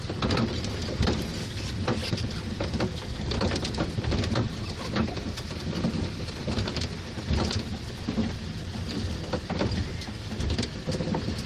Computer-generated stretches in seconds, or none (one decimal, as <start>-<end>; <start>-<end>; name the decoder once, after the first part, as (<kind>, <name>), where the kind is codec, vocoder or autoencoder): none